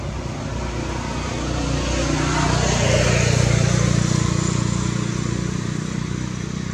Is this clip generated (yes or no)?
no